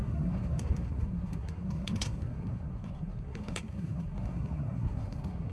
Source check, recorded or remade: remade